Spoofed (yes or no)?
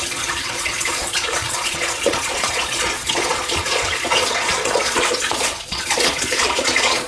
yes